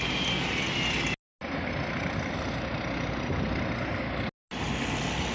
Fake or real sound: real